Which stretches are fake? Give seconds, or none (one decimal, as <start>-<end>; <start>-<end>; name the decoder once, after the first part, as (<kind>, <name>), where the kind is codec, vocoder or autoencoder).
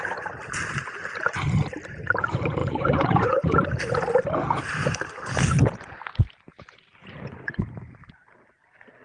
2.6-3.5 (vocoder, Vocos); 7.0-7.6